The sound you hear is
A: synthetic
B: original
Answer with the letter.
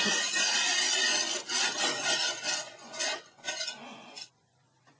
A